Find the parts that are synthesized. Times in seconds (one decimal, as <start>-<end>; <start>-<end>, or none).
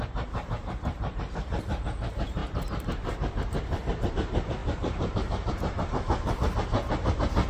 0.0-7.5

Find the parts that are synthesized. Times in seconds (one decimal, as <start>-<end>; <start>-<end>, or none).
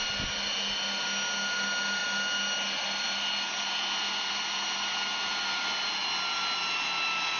none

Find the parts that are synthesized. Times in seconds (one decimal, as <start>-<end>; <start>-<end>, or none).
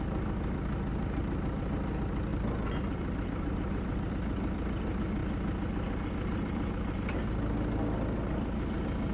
0.9-1.6; 2.3-4.1